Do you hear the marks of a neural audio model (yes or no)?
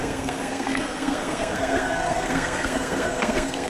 yes